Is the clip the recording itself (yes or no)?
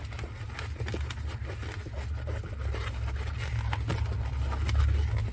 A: yes